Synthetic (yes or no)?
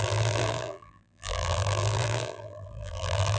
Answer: yes